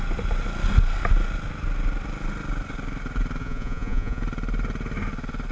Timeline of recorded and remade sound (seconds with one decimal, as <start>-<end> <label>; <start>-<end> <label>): 0.0-3.4 recorded; 3.4-4.2 remade; 4.2-5.5 recorded